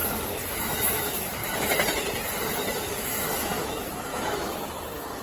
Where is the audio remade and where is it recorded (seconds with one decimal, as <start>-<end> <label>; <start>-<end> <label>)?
0.0-0.5 recorded; 0.5-1.4 remade; 1.4-2.8 recorded; 2.8-5.2 remade